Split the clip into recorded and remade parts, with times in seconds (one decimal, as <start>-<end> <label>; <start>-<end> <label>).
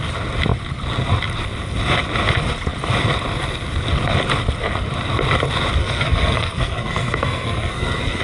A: 0.0-5.8 recorded; 5.8-8.2 remade